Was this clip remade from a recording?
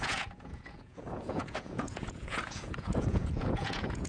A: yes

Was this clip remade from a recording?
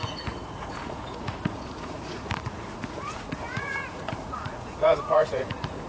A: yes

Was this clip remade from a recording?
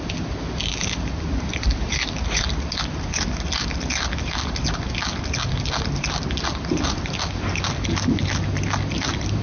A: no